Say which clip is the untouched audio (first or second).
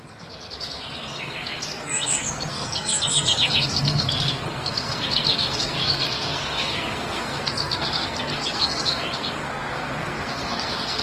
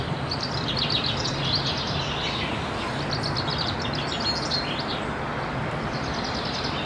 second